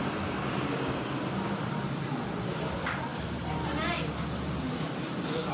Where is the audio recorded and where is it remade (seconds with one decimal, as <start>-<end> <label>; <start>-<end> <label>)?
0.0-5.5 recorded

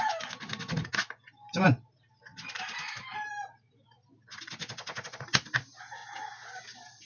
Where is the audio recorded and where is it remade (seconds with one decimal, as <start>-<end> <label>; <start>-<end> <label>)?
0.0-7.1 recorded

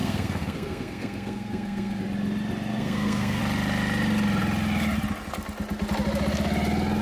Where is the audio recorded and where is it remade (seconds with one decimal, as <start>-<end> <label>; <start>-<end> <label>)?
0.0-2.0 remade; 2.0-2.7 recorded; 2.7-3.4 remade; 3.4-7.0 recorded

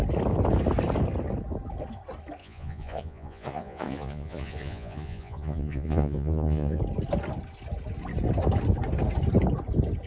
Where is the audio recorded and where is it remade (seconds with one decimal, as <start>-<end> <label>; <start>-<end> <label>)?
0.0-2.4 recorded; 2.4-6.8 remade; 6.8-10.1 recorded

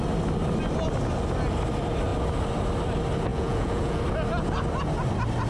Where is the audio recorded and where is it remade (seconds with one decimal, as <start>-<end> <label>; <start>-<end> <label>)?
0.0-3.3 recorded; 3.3-4.0 remade; 4.0-5.5 recorded